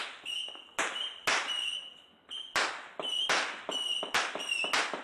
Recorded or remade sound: recorded